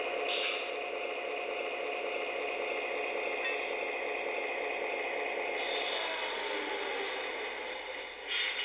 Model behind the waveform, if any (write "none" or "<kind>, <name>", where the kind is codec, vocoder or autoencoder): none